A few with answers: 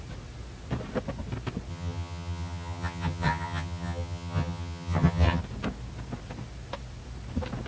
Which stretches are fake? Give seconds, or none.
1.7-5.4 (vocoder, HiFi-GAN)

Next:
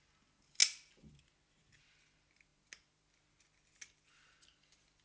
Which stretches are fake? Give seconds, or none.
none

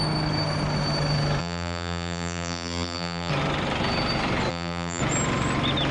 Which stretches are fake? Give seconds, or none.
1.4-3.3 (vocoder, BigVGAN v2); 4.5-5.0

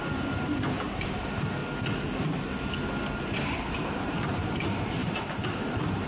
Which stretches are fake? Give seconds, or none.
0.0-1.6 (vocoder, BigVGAN v2); 3.2-5.0; 5.5-6.1

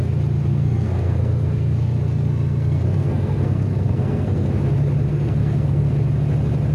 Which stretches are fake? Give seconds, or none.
0.5-4.5 (codec, SNAC); 5.1-5.9

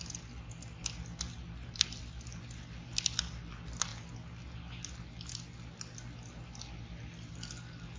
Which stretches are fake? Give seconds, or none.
none

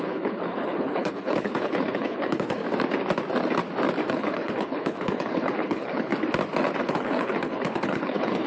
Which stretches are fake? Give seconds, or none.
0.0-2.6 (codec, HILCodec); 4.1-6.1; 6.8-8.5